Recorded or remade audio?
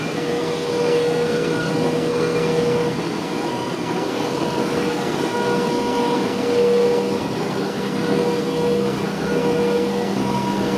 remade